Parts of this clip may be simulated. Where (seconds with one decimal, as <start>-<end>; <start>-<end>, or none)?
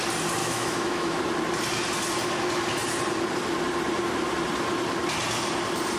0.4-1.2